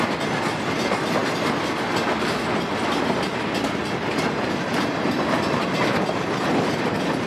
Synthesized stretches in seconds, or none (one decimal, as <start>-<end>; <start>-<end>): none